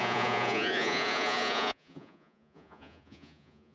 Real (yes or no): no